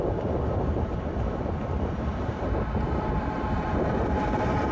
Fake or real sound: fake